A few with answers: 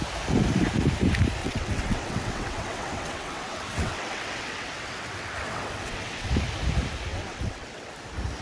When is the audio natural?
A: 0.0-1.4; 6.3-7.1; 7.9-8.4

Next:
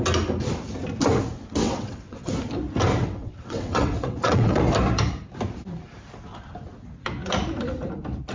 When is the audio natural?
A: 0.0-1.6; 2.3-3.0; 4.6-8.3

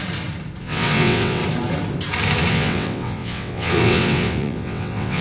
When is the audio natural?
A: 0.0-0.6; 1.4-2.5

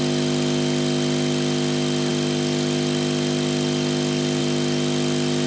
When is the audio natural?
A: 0.0-5.5

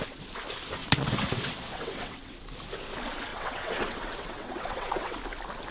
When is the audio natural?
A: 0.0-0.8; 2.4-3.3; 5.2-5.7